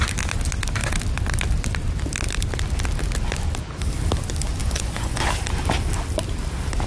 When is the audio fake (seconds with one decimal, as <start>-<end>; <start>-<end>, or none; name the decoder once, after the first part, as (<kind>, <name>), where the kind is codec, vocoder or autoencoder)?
4.6-5.2 (vocoder, Vocos)